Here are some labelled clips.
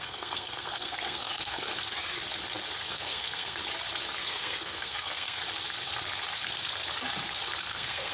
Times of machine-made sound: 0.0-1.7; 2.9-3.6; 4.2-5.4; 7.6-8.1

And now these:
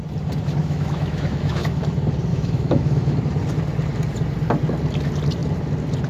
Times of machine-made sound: 0.6-1.8; 2.3-3.2

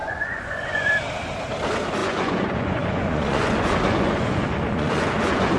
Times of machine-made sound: 0.0-0.9; 2.0-5.6